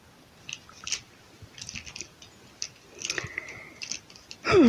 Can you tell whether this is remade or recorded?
recorded